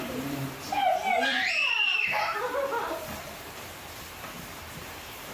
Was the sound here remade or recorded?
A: remade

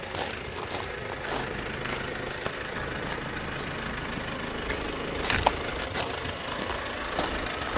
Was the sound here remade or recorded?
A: remade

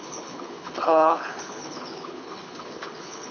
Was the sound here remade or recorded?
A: remade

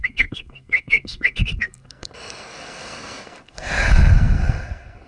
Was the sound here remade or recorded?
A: remade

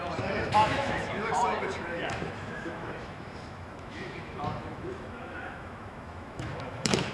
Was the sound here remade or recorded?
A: remade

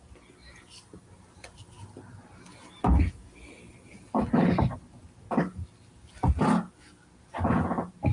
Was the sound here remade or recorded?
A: recorded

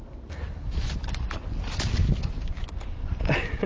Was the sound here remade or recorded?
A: recorded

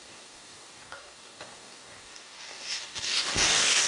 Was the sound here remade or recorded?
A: remade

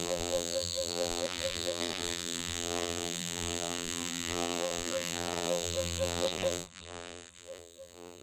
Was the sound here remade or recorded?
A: remade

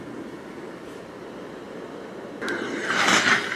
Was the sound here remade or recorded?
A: recorded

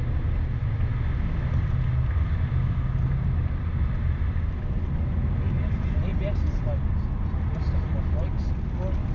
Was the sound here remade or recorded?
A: recorded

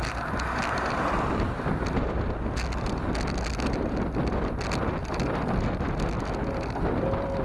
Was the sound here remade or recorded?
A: recorded